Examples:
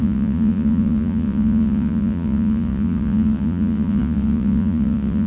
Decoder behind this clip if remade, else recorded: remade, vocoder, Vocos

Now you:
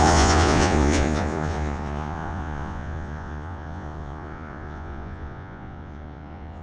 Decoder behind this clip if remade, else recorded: remade, vocoder, Vocos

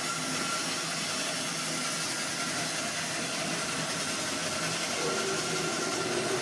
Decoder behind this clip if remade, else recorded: recorded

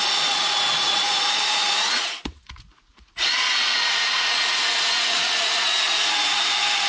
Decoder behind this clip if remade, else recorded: remade, vocoder, Vocos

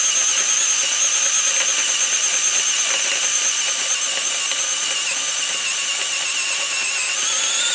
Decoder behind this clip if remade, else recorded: recorded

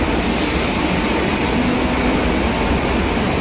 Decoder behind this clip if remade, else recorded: recorded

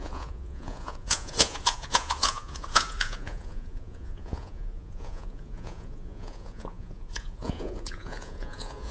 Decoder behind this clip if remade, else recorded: remade, vocoder, Vocos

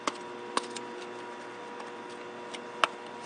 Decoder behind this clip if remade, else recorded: recorded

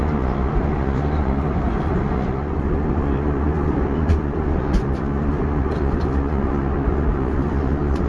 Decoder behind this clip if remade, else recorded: remade, vocoder, Vocos